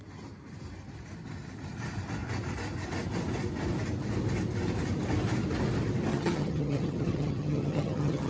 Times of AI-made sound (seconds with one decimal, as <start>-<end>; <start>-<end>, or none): 6.1-8.3